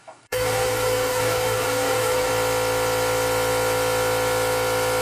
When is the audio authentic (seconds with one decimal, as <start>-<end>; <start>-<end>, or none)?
2.3-5.0